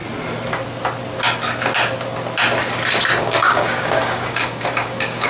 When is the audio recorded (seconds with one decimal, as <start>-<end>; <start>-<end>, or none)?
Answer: 0.0-3.2